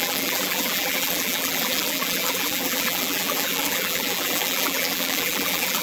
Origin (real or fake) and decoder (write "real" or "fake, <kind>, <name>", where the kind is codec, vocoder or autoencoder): fake, vocoder, BigVGAN v2